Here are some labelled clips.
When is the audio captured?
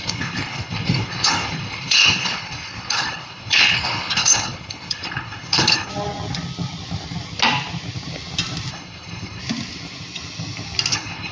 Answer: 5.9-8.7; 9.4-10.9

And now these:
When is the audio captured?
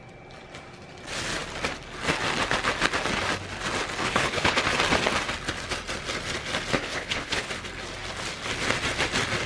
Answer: 0.0-4.0; 4.6-6.8; 7.5-9.5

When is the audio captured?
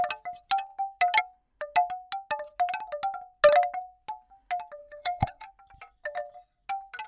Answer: 0.0-4.8; 5.5-7.1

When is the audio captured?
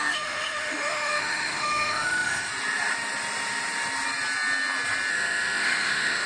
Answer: 2.5-5.1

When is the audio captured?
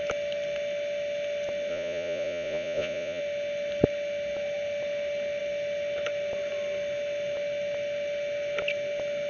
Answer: 0.0-1.7; 3.2-9.3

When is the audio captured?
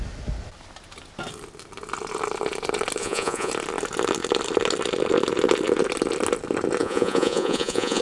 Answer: 0.0-3.0; 3.5-6.8